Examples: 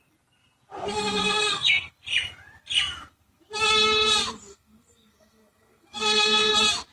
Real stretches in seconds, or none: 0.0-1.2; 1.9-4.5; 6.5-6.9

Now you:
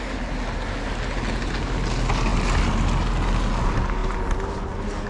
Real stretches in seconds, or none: 0.0-5.1

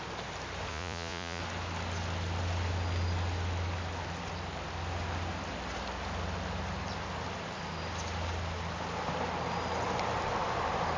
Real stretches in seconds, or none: 0.0-0.7; 1.4-11.0

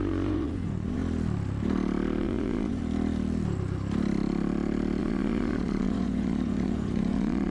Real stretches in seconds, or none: 1.0-2.2; 2.8-5.0

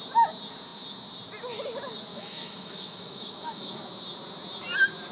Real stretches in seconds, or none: 0.0-2.1; 3.8-5.1

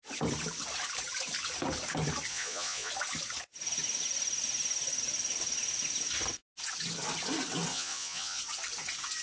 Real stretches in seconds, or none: 0.0-2.3; 2.9-7.7; 8.4-9.2

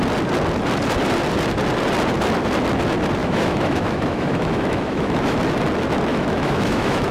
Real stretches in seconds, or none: 0.0-3.2; 5.4-6.1